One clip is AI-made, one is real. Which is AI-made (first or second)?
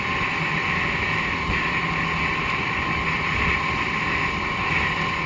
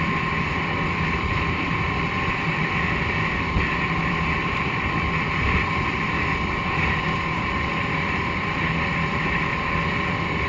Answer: second